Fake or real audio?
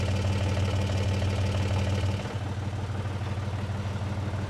real